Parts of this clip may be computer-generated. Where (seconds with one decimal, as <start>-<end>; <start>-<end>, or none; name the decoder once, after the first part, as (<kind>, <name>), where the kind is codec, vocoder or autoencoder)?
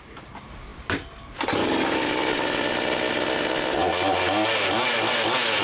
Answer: 2.2-3.2 (vocoder, BigVGAN v2); 3.8-5.6